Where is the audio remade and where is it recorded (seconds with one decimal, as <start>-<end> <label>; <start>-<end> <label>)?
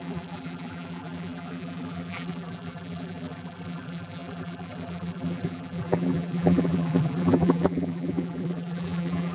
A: 0.0-9.3 remade